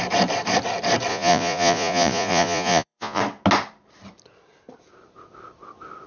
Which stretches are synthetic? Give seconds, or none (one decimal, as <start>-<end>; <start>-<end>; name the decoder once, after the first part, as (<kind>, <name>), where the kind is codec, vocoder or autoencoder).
1.1-3.2 (vocoder, Vocos)